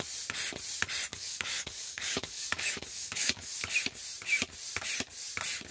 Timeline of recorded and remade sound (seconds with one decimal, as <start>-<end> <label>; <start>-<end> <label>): 0.0-1.1 recorded; 1.1-3.5 remade; 3.5-5.7 recorded